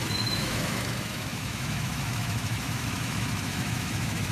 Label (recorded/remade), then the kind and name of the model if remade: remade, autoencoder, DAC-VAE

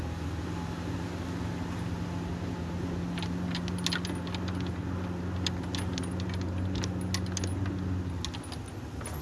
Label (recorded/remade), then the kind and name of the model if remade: recorded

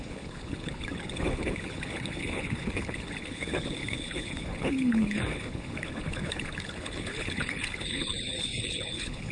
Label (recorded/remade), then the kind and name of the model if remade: remade, codec, HILCodec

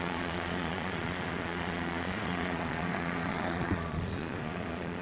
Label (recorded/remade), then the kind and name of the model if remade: remade, vocoder, Vocos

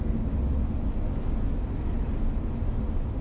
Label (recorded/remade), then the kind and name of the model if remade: recorded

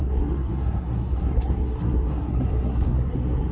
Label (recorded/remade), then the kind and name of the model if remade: remade, codec, SNAC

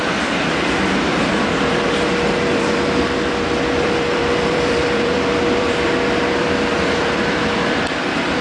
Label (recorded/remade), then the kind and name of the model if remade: remade, vocoder, BigVGAN v2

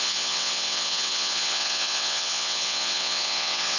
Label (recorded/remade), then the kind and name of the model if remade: remade, vocoder, WaveNeXt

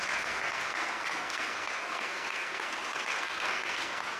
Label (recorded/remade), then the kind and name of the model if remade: remade, codec, SNAC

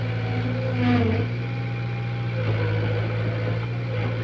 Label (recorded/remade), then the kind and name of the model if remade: recorded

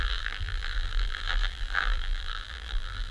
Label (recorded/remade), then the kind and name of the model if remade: remade, vocoder, BigVGAN v2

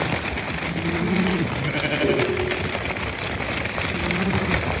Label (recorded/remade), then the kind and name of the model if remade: recorded